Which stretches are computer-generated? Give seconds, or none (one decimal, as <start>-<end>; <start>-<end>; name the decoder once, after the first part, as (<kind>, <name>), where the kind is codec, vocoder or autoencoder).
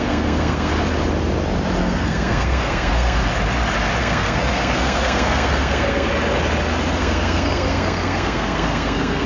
0.0-0.7 (codec, SNAC); 1.8-3.2; 4.0-6.1; 7.0-9.3